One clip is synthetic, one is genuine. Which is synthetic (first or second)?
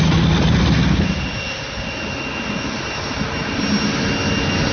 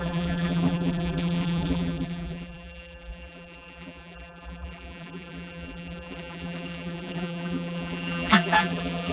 second